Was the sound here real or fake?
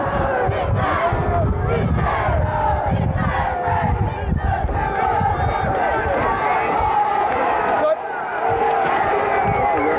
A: real